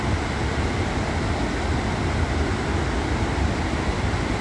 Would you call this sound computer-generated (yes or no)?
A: no